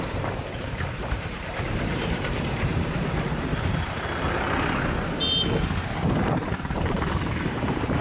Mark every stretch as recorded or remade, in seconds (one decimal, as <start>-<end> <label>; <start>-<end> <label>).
0.0-3.5 remade; 3.5-6.2 recorded; 6.2-8.0 remade